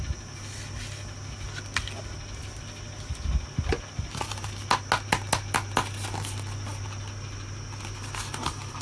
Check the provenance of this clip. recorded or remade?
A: recorded